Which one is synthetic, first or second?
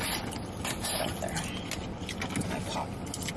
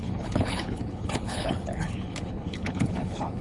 second